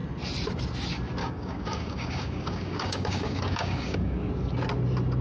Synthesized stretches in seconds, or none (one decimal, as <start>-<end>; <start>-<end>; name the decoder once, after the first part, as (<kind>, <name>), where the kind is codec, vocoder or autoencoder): 1.2-4.3 (codec, DAC)